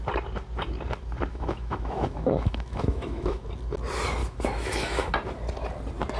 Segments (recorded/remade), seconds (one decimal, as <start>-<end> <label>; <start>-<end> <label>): 0.0-1.3 recorded; 1.3-3.5 remade; 3.5-4.2 recorded; 4.2-5.1 remade; 5.1-6.2 recorded

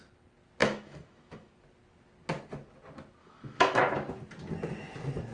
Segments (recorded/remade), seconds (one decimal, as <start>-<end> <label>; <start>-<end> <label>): 0.0-0.6 recorded; 0.6-1.5 remade; 1.5-3.2 recorded; 3.2-3.8 remade; 3.8-5.3 recorded

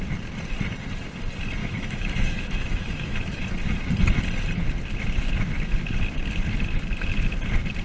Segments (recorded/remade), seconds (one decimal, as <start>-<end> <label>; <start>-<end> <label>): 0.0-1.6 recorded; 1.6-3.4 remade; 3.4-7.8 recorded

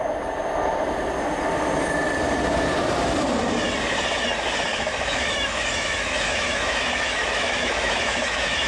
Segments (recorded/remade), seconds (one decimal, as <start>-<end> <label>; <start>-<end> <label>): 0.0-4.7 recorded; 4.7-8.7 remade

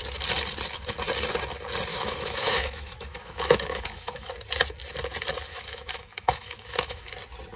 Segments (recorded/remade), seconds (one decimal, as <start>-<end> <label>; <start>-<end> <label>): 0.0-1.9 recorded; 1.9-4.3 remade; 4.3-5.5 recorded; 5.5-7.1 remade; 7.1-7.6 recorded